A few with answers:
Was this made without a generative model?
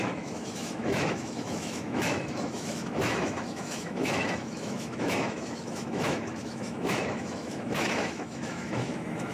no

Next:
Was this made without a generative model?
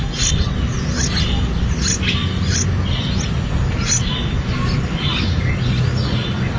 yes